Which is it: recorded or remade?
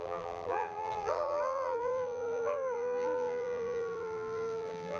remade